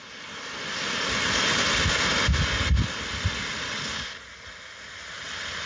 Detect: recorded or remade recorded